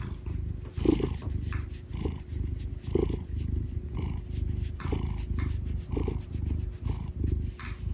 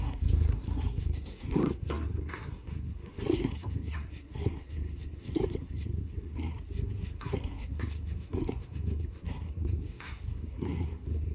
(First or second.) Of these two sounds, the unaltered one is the first